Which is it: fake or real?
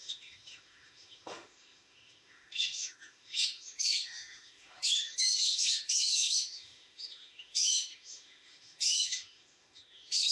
fake